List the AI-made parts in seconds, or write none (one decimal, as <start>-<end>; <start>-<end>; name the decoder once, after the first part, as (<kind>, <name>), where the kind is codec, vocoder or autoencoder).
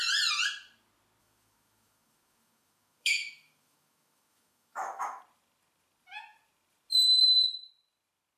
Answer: 1.2-5.2 (autoencoder, DAC-VAE)